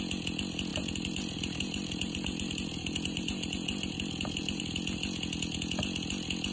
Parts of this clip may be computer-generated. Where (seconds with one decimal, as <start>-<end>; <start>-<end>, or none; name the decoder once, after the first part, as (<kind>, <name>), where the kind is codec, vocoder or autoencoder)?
0.7-4.6 (vocoder, BigVGAN v2)